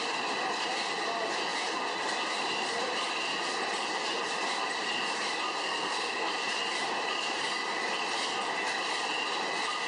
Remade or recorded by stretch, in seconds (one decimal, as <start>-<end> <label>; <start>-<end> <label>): 0.0-5.6 recorded; 5.6-6.3 remade; 6.3-9.9 recorded